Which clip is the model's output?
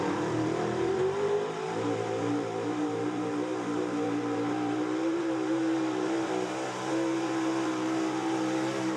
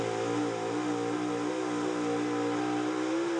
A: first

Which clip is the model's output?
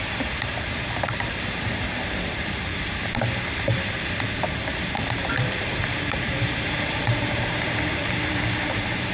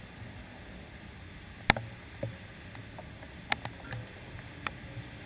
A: first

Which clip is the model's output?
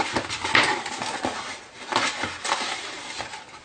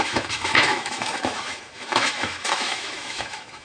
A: second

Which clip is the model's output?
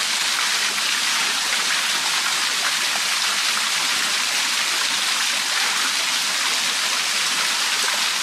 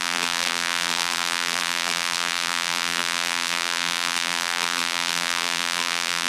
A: second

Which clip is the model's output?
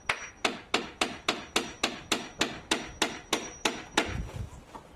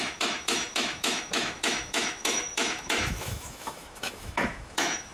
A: second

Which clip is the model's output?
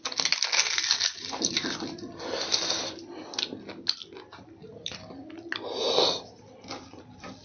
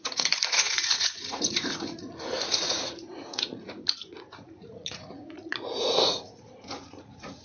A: second